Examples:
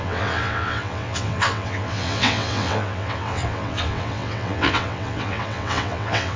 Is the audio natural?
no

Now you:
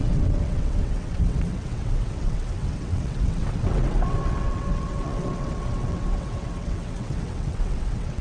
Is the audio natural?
no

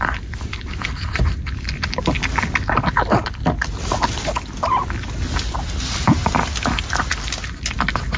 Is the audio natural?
yes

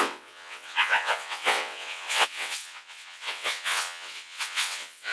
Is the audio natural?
no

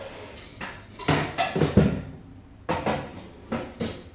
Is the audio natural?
yes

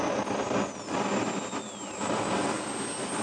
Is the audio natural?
yes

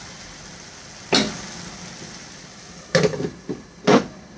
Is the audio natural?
yes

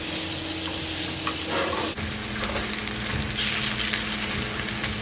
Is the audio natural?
yes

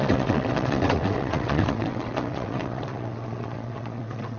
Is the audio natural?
no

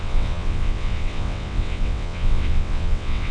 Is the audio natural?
no